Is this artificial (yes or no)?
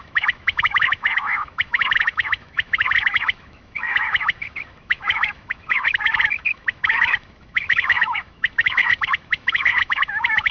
yes